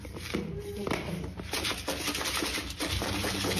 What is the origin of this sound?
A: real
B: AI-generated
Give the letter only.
B